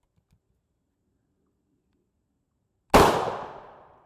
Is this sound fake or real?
real